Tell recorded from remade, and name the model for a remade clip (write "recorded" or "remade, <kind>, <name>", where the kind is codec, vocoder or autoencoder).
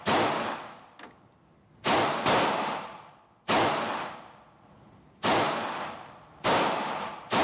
recorded